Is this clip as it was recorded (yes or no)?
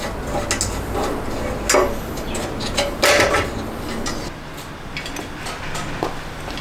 yes